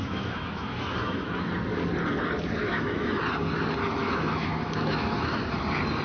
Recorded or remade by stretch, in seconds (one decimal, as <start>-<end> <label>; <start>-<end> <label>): 0.0-1.5 remade; 1.5-2.6 recorded; 2.6-3.2 remade; 3.2-4.0 recorded; 4.0-5.4 remade; 5.4-6.0 recorded